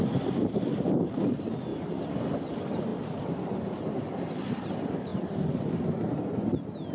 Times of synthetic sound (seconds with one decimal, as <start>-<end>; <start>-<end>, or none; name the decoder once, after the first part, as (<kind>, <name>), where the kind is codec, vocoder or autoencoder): 1.7-2.5 (vocoder, BigVGAN v2); 5.1-5.8